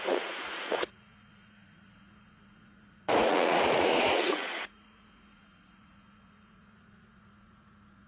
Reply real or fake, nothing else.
fake